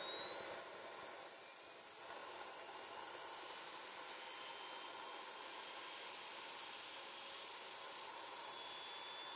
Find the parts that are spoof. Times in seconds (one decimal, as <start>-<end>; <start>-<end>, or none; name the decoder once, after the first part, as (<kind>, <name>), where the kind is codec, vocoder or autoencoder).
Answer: none